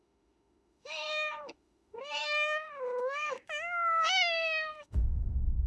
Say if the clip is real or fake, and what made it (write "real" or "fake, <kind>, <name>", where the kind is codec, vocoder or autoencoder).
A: fake, autoencoder, DAC-VAE